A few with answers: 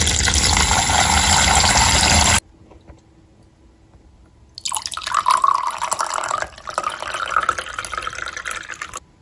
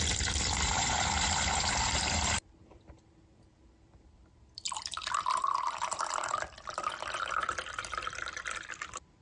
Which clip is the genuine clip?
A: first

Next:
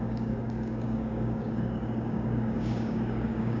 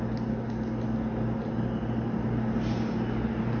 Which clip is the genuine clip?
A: second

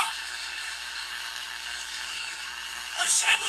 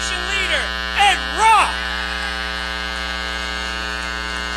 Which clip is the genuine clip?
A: second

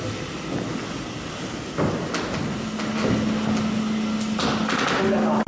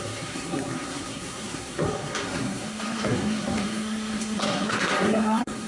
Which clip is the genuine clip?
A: first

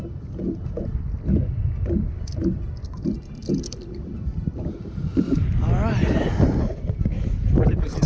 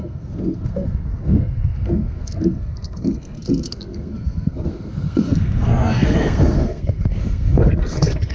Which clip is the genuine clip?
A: first